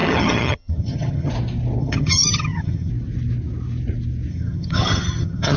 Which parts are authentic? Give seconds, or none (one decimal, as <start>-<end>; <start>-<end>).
1.3-1.8; 2.9-4.3